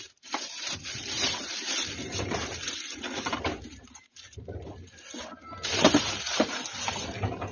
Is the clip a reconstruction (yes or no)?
yes